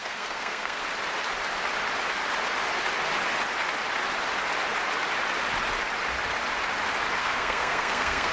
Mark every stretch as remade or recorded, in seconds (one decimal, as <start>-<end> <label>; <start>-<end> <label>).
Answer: 0.0-0.8 remade; 0.8-7.2 recorded; 7.2-8.3 remade